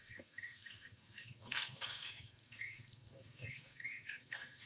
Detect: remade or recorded remade